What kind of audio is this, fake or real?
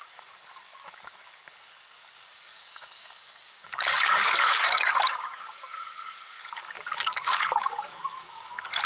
fake